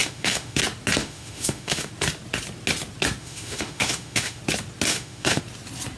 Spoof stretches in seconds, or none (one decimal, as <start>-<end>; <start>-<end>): 0.0-0.6; 1.0-1.9; 3.2-4.4; 4.9-5.4